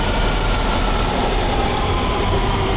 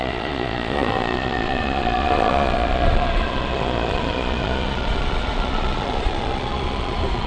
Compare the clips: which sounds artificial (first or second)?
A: second